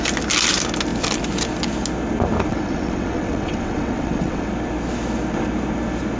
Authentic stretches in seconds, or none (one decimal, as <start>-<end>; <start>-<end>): 0.0-2.5; 4.5-6.2